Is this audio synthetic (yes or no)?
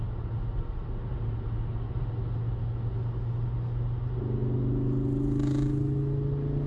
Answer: no